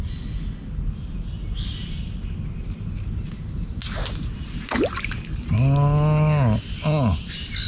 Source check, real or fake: real